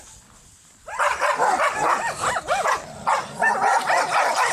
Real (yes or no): yes